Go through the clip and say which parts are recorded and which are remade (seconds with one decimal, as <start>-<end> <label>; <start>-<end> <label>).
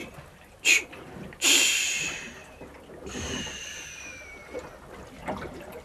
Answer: 0.0-5.8 recorded